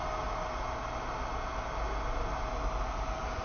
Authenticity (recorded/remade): recorded